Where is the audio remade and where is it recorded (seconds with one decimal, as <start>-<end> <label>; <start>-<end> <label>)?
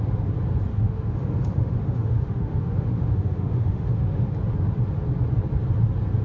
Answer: 0.0-0.7 recorded; 0.7-4.2 remade; 4.2-6.2 recorded